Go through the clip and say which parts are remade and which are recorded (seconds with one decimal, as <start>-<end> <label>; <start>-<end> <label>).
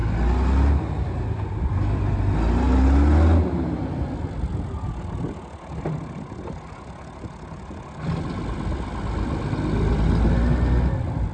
0.0-11.3 recorded